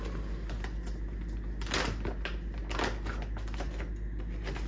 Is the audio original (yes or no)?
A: yes